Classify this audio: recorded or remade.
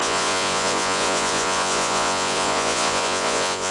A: remade